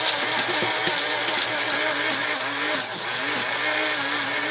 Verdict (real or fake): real